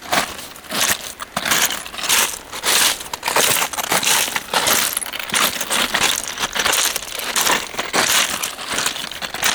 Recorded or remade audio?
recorded